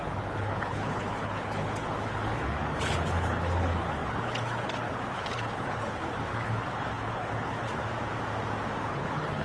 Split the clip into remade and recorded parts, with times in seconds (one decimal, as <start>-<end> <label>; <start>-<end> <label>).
0.0-7.8 remade; 7.8-8.8 recorded; 8.8-9.4 remade